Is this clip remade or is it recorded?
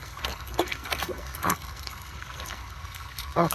remade